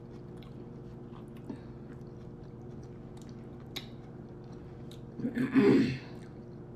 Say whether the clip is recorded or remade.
recorded